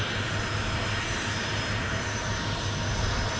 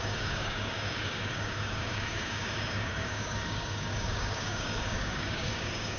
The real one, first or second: first